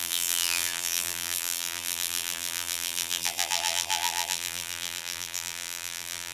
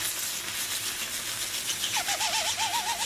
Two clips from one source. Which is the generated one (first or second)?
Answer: first